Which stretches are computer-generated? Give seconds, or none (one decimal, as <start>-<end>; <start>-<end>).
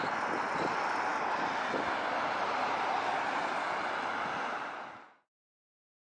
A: none